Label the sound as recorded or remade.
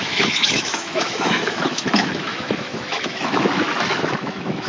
remade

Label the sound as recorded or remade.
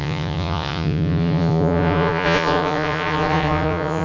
remade